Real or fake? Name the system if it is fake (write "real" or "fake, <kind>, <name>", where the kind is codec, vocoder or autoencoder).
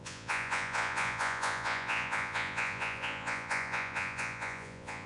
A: fake, vocoder, Vocos